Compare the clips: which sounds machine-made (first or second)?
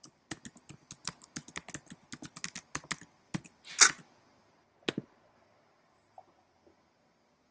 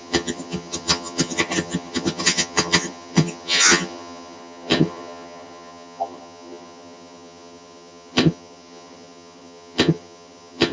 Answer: second